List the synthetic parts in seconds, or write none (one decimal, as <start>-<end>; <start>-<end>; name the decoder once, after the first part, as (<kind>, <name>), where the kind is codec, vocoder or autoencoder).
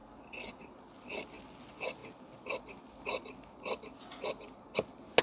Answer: none